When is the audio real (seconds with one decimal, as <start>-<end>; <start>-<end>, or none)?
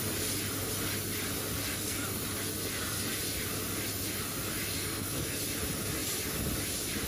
0.0-1.7; 2.2-4.8; 5.4-7.1